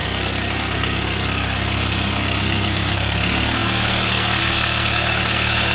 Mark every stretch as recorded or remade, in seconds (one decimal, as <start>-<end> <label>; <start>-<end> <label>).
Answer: 0.0-5.7 remade